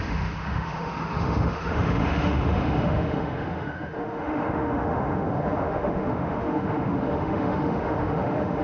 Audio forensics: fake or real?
fake